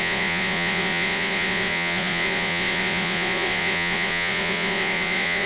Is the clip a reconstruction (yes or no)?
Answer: yes